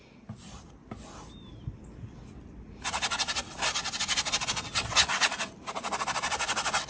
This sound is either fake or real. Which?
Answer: real